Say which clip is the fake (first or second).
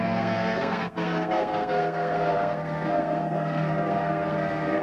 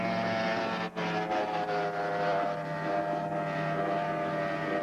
first